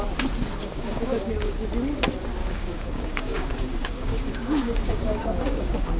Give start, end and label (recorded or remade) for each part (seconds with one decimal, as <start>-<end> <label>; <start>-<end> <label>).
0.0-0.6 recorded; 0.6-1.7 remade; 1.7-2.4 recorded; 2.4-6.0 remade